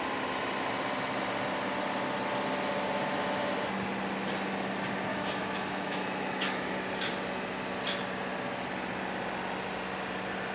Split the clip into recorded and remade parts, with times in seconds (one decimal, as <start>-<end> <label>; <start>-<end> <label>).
0.0-5.1 recorded; 5.1-7.1 remade; 7.1-10.5 recorded